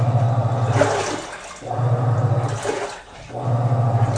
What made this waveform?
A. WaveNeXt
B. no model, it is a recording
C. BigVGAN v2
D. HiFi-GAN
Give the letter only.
B